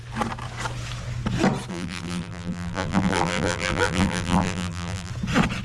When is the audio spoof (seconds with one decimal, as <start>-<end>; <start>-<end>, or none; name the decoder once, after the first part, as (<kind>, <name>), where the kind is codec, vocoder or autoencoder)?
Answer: 1.7-5.1 (vocoder, BigVGAN v2)